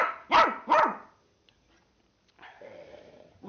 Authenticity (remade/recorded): recorded